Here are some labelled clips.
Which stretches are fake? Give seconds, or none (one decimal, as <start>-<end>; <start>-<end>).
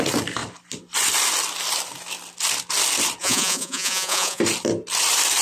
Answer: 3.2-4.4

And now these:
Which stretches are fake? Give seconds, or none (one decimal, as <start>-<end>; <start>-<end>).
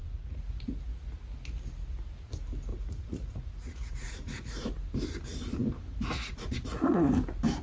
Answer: 0.0-0.8; 2.7-4.8; 5.9-7.1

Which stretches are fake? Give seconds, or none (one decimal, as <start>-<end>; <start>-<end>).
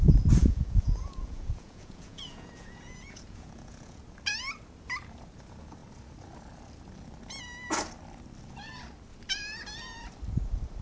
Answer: 0.4-4.0